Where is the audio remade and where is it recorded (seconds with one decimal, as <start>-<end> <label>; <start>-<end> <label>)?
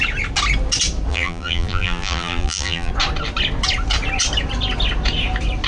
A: 0.0-1.1 recorded; 1.1-2.9 remade; 2.9-5.7 recorded